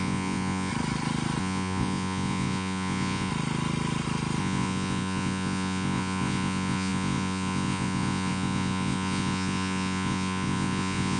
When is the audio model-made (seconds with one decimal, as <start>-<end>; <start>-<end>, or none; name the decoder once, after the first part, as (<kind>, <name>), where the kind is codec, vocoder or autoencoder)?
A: 0.0-0.7 (vocoder, Vocos); 1.4-3.3; 4.4-11.2